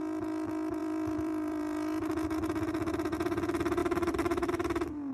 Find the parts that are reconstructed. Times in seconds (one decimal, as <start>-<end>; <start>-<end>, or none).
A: 0.8-1.6